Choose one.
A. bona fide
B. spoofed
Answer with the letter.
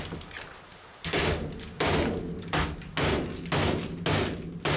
A